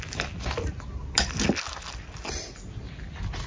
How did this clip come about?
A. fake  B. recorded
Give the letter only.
B